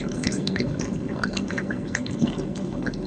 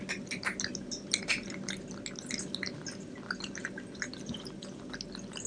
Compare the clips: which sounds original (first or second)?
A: second